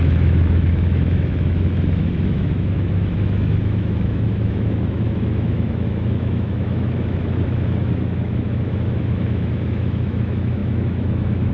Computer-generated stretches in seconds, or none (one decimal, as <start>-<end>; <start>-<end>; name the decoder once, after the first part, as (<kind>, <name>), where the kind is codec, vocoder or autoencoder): 0.0-11.5 (autoencoder, DAC-VAE)